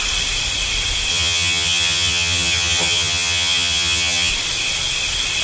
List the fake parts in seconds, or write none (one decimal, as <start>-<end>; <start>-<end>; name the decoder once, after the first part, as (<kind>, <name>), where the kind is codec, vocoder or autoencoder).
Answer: 1.1-4.3 (vocoder, HiFi-GAN)